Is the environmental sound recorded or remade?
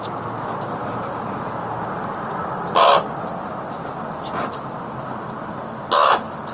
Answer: recorded